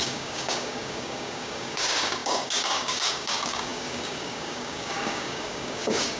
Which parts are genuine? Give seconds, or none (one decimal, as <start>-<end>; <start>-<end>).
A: none

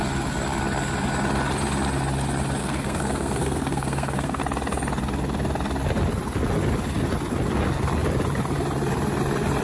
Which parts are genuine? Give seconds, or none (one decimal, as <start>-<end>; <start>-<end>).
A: 0.0-2.6; 4.4-9.6

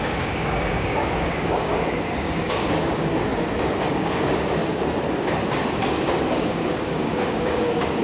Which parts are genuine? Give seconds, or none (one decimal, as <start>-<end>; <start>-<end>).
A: 3.3-3.9; 4.6-6.3

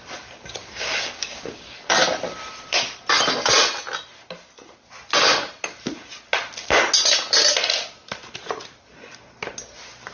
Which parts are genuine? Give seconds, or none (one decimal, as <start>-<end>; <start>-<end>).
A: 0.0-0.6; 1.8-10.1

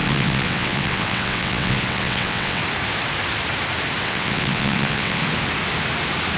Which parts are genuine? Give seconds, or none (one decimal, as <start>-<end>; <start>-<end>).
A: 2.6-4.0; 5.2-6.4

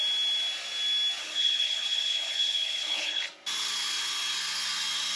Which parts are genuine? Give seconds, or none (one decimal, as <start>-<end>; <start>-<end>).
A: 0.0-1.2; 3.3-5.2

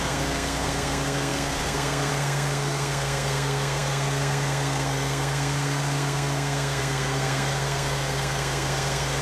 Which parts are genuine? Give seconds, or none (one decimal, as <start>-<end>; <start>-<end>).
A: none

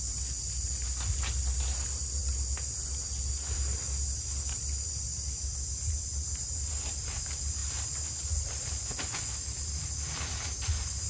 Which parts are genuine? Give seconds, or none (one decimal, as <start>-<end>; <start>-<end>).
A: 0.0-11.1